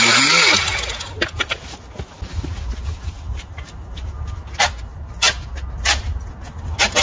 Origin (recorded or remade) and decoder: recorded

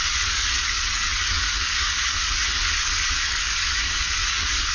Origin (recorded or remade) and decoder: remade, codec, DAC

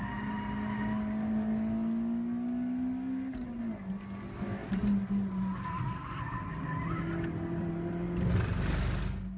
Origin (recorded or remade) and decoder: recorded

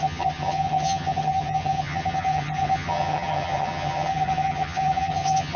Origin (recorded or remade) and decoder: remade, vocoder, HiFi-GAN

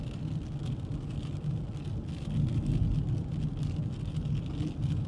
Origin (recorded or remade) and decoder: recorded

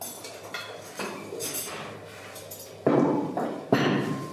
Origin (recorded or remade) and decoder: recorded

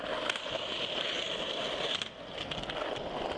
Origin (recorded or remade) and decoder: recorded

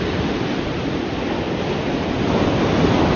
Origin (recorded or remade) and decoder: recorded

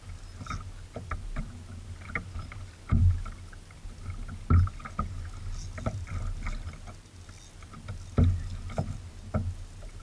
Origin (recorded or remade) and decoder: recorded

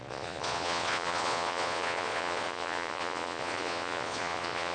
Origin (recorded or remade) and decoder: remade, vocoder, Vocos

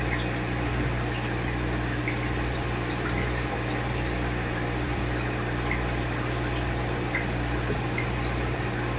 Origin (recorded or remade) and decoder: remade, vocoder, BigVGAN v2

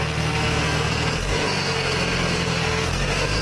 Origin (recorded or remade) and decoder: remade, codec, SNAC